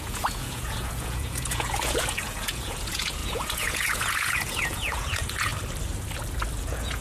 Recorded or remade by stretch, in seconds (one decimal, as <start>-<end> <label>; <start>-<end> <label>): 0.0-5.5 remade; 5.5-6.6 recorded; 6.6-7.0 remade